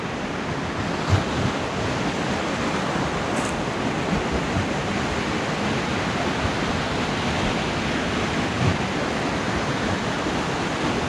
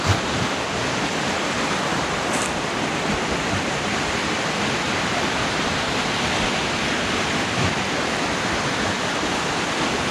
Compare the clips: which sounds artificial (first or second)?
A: second